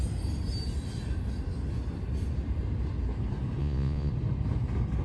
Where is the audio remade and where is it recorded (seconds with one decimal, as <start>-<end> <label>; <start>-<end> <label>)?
0.0-3.6 recorded; 3.6-4.1 remade; 4.1-5.0 recorded

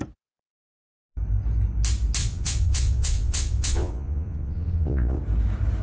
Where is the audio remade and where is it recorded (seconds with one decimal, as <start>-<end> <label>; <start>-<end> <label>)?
0.0-2.2 recorded; 2.2-5.2 remade; 5.2-5.8 recorded

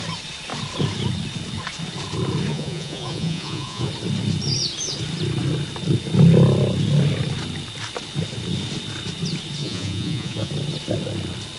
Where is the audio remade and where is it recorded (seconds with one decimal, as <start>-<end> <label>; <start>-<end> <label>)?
0.0-2.5 recorded; 2.5-3.9 remade; 3.9-9.6 recorded; 9.6-10.5 remade; 10.5-11.6 recorded